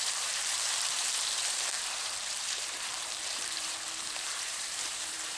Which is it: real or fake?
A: fake